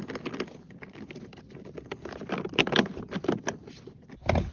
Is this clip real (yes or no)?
yes